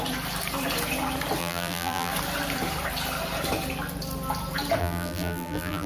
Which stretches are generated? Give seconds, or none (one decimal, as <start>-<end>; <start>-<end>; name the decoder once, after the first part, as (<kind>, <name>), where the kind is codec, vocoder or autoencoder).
1.4-2.1 (vocoder, BigVGAN v2); 4.8-5.9